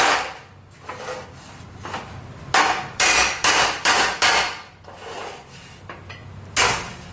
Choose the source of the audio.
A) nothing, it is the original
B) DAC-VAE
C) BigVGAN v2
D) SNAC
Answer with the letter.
C